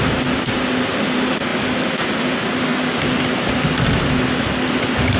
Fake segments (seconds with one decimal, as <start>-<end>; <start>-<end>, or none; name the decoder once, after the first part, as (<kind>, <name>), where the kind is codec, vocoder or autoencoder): none